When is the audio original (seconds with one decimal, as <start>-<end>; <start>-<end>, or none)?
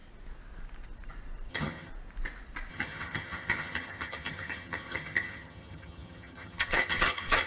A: 0.0-1.5; 1.9-2.7